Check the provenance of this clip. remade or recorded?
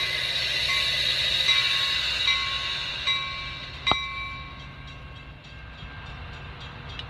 recorded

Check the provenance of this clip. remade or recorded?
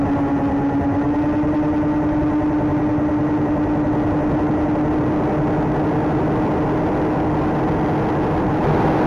recorded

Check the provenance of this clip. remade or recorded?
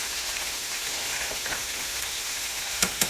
remade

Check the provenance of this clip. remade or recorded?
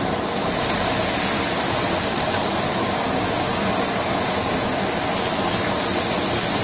recorded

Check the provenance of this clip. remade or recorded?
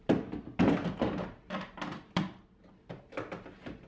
recorded